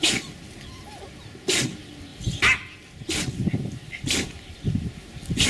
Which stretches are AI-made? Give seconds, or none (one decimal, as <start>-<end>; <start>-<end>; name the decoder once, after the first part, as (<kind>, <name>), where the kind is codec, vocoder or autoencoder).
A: none